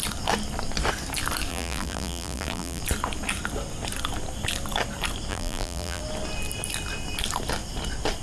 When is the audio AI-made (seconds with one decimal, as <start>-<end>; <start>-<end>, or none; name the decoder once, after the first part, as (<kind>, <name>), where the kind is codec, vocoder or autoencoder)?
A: 1.5-2.8 (vocoder, BigVGAN v2); 5.3-6.0